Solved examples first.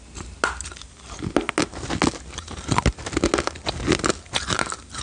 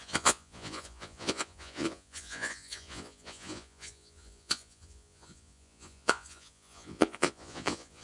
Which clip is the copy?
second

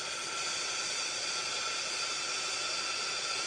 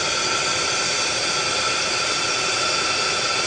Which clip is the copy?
first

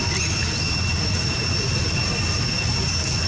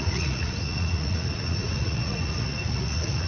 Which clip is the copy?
second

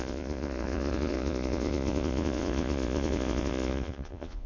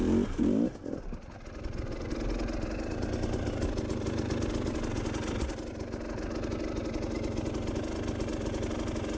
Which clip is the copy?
first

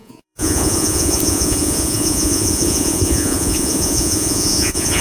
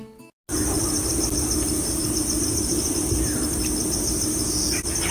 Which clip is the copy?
first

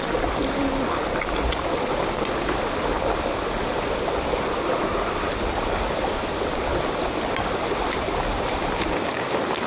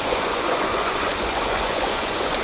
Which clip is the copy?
second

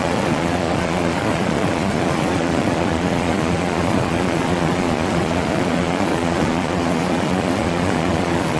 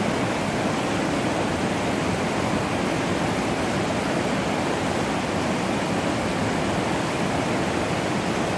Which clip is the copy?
first